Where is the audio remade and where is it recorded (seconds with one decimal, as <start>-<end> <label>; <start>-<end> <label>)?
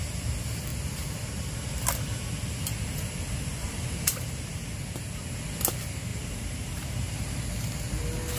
0.0-0.7 recorded; 0.7-1.6 remade; 1.6-3.6 recorded; 3.6-4.6 remade; 4.6-6.1 recorded; 6.1-7.2 remade; 7.2-8.4 recorded